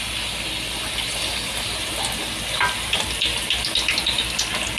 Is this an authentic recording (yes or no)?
yes